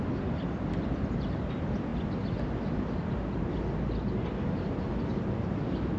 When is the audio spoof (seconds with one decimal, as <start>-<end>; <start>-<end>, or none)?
none